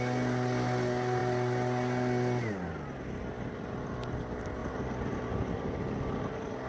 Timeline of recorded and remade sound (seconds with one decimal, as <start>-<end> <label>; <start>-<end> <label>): 0.0-4.6 recorded; 4.6-5.8 remade; 5.8-6.7 recorded